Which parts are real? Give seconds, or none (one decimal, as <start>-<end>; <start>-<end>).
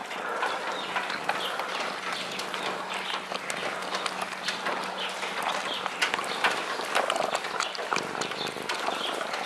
0.0-9.5